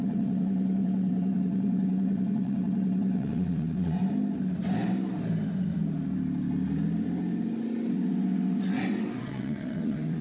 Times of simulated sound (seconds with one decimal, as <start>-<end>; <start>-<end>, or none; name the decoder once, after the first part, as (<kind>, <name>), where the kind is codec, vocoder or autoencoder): 0.0-4.0 (vocoder, WaveNeXt); 7.9-10.2